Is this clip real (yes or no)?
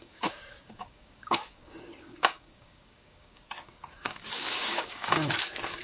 no